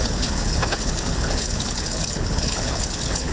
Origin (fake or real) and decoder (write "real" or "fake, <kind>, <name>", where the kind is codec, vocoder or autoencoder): fake, codec, HILCodec